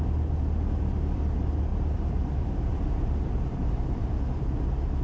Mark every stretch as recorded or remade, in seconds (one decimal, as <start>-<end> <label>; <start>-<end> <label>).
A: 0.0-1.7 recorded; 1.7-4.2 remade; 4.2-5.0 recorded